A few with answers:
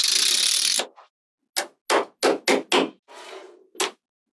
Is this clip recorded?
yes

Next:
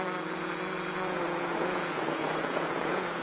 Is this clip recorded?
no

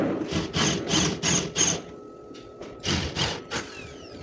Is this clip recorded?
yes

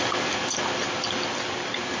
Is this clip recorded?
yes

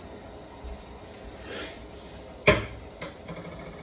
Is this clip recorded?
yes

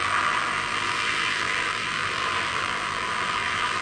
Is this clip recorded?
no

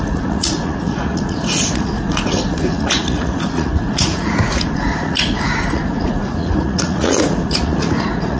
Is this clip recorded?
no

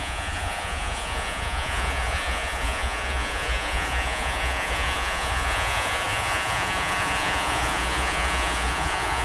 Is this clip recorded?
no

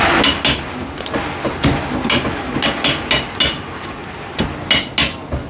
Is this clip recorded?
yes